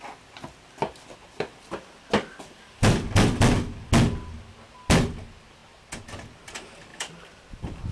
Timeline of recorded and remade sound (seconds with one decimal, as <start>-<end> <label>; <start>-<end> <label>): 0.0-1.2 recorded; 1.2-3.3 remade; 3.3-6.9 recorded; 6.9-7.9 remade